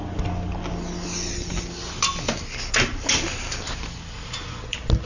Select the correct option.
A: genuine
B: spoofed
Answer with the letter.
A